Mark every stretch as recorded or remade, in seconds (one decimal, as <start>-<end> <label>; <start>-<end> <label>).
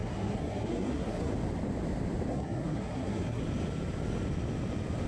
0.0-1.3 remade; 1.3-2.3 recorded; 2.3-3.4 remade; 3.4-5.1 recorded